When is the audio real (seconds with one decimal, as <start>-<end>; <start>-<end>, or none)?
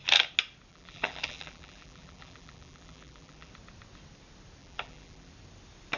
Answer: 0.0-0.7; 3.5-4.6; 5.3-6.0